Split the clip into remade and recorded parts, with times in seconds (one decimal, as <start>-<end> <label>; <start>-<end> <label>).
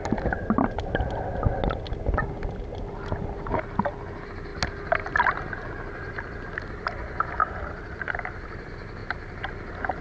0.0-7.4 recorded; 7.4-8.1 remade; 8.1-10.0 recorded